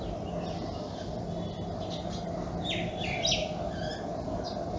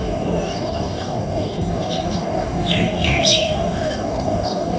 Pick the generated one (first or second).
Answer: second